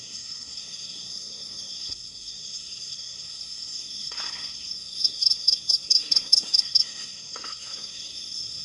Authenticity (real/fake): fake